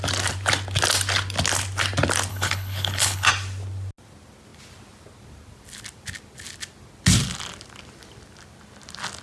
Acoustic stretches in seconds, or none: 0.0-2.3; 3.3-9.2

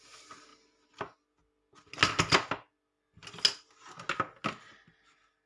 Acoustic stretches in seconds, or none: 0.0-5.5

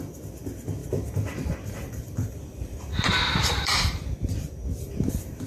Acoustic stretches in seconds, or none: 0.0-0.8; 4.1-5.5

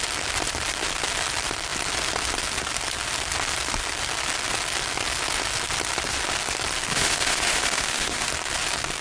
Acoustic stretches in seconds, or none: 0.0-6.9; 8.3-9.0

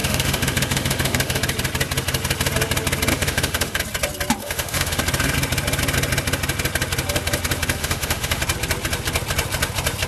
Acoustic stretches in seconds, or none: 1.4-3.1; 3.8-4.4; 5.0-7.8; 8.4-10.1

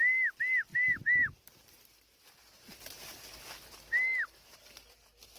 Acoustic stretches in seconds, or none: 0.0-0.7; 3.3-4.1; 4.6-5.4